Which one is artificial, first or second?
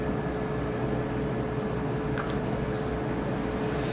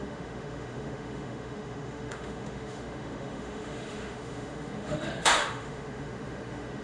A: second